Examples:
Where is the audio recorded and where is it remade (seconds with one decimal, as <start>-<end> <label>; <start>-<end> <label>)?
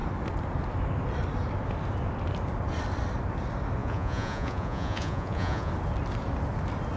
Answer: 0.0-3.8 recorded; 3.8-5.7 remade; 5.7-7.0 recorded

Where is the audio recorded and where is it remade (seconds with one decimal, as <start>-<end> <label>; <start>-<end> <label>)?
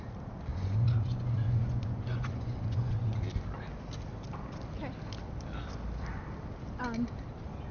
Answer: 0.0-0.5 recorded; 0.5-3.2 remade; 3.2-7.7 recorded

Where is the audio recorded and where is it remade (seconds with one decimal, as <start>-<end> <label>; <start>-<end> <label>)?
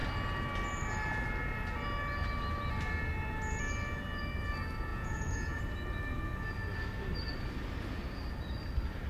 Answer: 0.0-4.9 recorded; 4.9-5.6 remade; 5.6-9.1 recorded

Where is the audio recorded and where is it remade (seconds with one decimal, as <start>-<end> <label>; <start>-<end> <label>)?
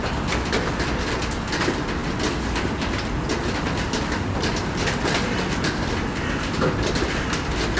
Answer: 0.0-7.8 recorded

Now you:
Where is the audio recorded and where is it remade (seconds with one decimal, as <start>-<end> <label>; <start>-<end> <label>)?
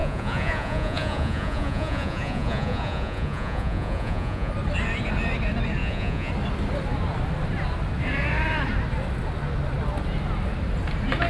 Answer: 0.0-4.5 remade; 4.5-5.8 recorded; 5.8-6.3 remade; 6.3-11.3 recorded